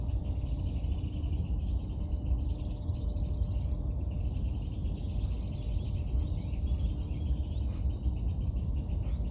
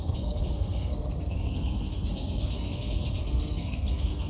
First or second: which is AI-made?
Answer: second